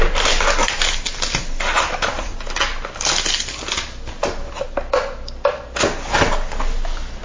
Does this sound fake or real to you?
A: real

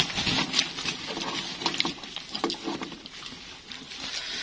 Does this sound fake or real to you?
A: real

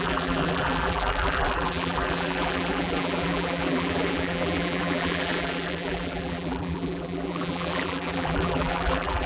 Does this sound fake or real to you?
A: fake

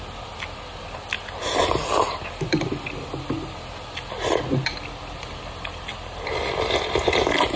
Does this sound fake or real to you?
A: real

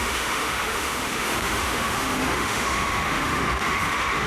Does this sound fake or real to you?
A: fake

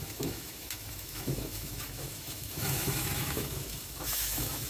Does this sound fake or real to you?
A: fake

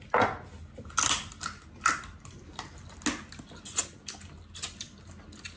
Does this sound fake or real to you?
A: real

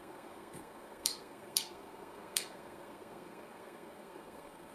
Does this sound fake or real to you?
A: fake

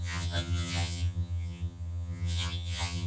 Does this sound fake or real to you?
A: fake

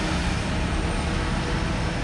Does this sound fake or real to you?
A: real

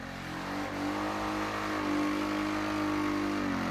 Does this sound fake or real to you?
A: real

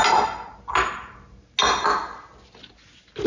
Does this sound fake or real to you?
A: real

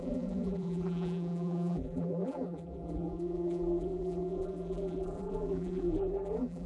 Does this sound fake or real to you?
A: fake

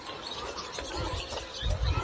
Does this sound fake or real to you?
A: real